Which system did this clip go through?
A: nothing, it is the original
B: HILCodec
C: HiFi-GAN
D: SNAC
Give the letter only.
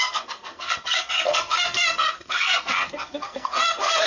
D